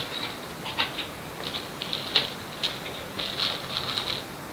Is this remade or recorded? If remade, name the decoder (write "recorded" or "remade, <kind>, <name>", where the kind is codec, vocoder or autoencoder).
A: recorded